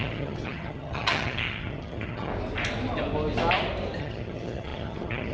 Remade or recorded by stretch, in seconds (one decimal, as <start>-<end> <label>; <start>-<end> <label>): 0.0-2.3 remade; 2.3-4.0 recorded; 4.0-5.3 remade